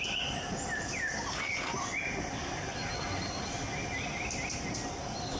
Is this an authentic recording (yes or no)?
yes